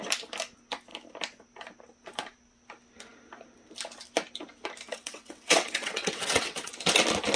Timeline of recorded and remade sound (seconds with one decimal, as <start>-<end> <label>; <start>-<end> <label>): 0.0-4.9 recorded; 4.9-6.7 remade; 6.7-7.4 recorded